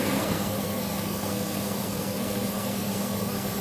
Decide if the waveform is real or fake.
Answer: fake